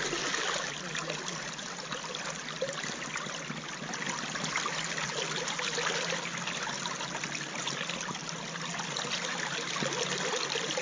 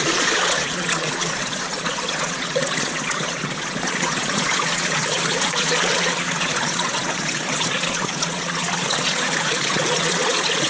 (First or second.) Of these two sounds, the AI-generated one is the second